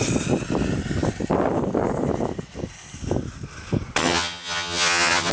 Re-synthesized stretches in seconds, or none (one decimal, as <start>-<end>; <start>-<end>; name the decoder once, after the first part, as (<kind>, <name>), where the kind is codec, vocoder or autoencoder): 4.0-5.3 (vocoder, HiFi-GAN)